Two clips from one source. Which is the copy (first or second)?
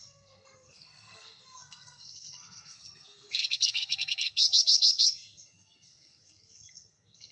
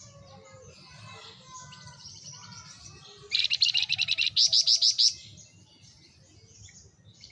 first